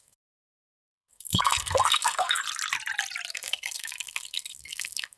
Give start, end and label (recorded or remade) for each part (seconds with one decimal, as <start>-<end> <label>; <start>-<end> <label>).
0.0-2.4 remade; 2.4-3.3 recorded; 3.3-5.2 remade